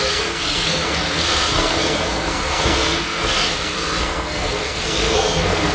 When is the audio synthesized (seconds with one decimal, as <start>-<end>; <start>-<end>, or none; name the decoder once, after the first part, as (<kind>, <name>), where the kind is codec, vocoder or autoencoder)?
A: 0.0-5.7 (codec, SNAC)